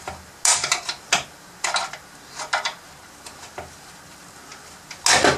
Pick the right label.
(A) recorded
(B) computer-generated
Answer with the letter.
A